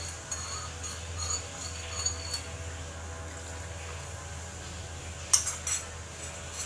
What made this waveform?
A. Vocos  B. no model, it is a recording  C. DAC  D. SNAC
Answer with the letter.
B